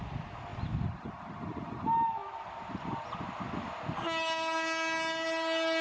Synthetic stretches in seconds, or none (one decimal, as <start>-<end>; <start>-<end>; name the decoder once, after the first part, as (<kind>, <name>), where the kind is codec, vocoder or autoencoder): none